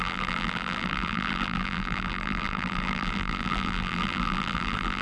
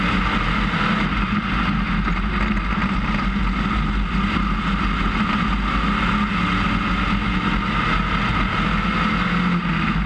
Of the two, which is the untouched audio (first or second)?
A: second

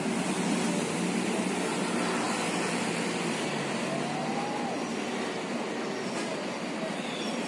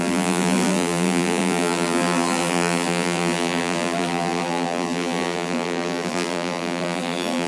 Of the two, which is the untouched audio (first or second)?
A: first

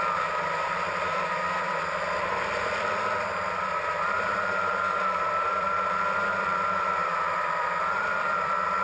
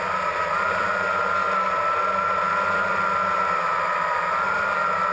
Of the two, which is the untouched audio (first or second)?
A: second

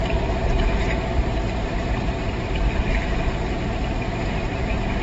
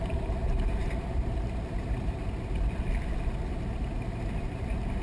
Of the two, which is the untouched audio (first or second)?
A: first